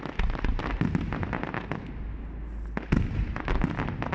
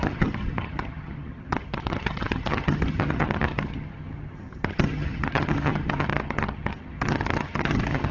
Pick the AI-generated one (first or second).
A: second